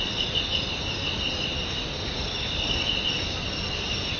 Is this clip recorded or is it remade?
recorded